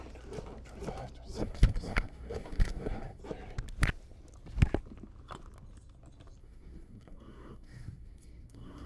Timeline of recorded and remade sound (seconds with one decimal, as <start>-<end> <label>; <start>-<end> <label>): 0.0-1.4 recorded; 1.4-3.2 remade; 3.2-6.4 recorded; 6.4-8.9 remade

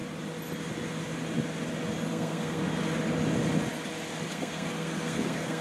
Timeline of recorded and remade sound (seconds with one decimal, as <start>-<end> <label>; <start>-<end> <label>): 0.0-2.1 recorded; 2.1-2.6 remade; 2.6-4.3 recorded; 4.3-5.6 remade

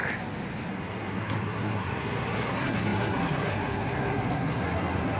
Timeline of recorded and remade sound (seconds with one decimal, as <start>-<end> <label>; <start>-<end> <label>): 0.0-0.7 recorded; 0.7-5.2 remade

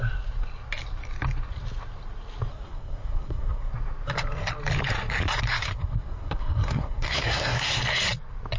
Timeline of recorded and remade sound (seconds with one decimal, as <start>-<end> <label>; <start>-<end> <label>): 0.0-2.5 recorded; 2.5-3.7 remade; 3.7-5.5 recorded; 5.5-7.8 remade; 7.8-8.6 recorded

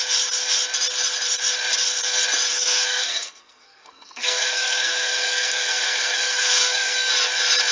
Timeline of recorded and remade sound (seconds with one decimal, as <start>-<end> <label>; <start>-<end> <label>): 0.0-2.5 recorded; 2.5-7.1 remade; 7.1-7.7 recorded